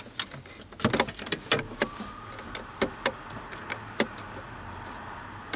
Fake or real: real